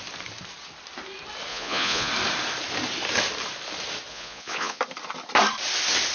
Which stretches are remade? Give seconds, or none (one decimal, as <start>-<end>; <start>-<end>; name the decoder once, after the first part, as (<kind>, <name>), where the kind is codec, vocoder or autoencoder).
1.5-2.1 (vocoder, Vocos); 4.1-4.8